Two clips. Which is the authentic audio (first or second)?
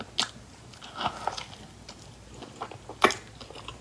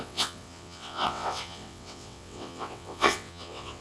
first